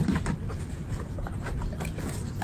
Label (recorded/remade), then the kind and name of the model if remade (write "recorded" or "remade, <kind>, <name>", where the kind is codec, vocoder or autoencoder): recorded